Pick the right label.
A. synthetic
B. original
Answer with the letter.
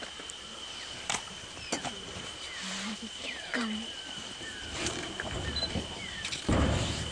A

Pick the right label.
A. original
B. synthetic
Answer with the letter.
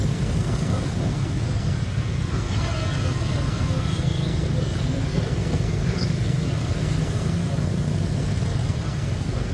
B